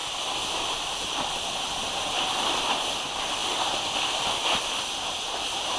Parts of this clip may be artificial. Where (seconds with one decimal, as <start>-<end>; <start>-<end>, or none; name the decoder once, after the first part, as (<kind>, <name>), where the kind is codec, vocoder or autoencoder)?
0.0-2.6 (vocoder, BigVGAN v2)